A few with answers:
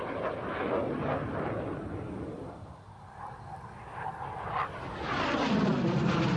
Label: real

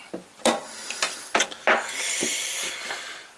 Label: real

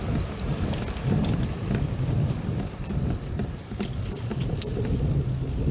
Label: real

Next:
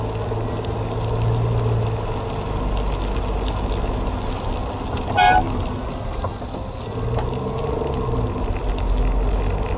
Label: real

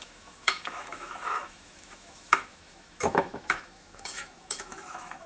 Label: fake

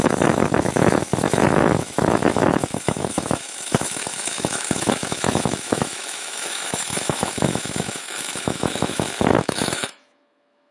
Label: fake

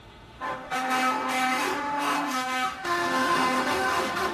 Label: fake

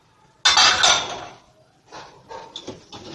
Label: real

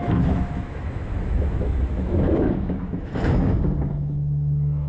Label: fake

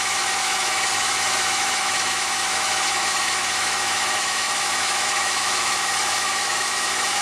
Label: fake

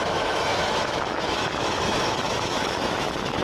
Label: fake